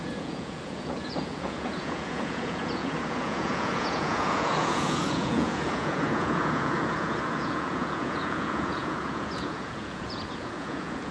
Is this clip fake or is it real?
fake